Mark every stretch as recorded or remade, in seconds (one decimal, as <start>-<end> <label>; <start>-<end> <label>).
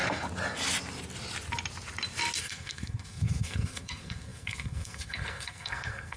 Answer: 0.0-2.4 recorded; 2.4-6.2 remade